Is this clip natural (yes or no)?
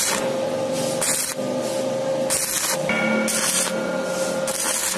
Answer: yes